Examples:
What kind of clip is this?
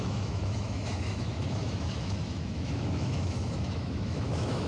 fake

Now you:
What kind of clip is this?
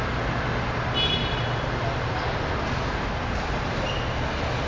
real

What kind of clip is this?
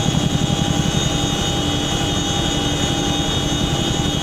real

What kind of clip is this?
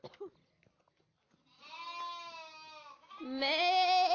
real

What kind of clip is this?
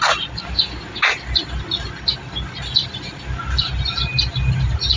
real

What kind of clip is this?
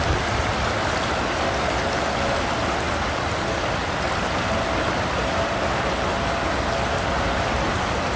real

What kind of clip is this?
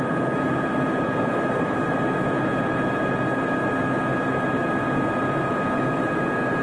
real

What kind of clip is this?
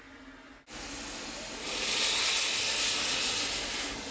real